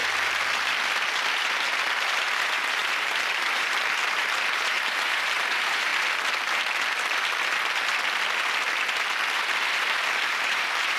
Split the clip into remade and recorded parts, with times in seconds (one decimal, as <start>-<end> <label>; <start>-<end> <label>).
0.0-1.7 recorded; 1.7-5.9 remade; 5.9-10.3 recorded; 10.3-11.0 remade